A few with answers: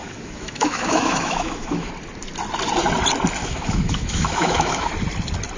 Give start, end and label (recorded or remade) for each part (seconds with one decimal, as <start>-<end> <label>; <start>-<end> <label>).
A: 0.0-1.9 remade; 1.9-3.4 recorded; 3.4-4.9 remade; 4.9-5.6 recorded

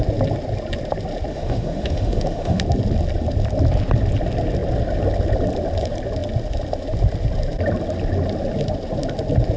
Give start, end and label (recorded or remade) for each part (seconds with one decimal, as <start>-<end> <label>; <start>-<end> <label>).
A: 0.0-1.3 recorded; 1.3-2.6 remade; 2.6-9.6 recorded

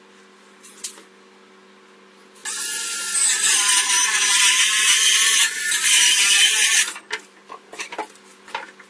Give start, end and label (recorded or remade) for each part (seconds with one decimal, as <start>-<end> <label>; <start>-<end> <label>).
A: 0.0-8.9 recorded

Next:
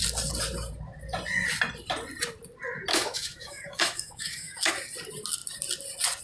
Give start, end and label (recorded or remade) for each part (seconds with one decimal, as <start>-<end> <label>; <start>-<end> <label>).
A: 0.0-2.9 recorded; 2.9-4.7 remade; 4.7-6.2 recorded